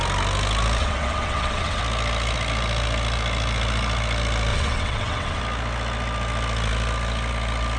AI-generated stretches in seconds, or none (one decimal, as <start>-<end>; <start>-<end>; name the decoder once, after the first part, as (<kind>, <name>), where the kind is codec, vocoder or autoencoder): 0.8-1.8 (vocoder, WaveNeXt); 4.5-5.4